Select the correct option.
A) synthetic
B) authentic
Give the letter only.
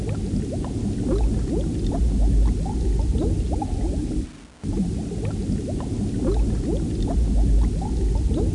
B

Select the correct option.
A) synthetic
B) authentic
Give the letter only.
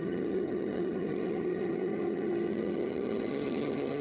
A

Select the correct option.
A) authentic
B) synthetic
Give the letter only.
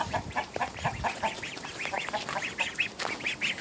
A